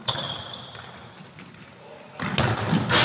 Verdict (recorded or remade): recorded